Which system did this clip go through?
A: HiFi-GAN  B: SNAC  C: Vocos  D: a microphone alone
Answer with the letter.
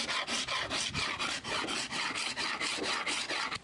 D